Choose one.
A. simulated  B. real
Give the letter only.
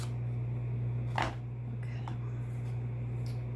B